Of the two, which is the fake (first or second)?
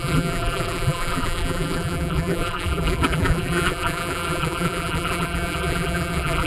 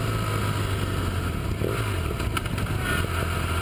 first